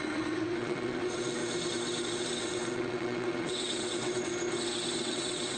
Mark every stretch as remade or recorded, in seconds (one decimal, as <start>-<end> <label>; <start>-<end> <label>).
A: 0.0-1.4 remade; 1.4-2.2 recorded; 2.2-4.3 remade; 4.3-5.0 recorded; 5.0-5.6 remade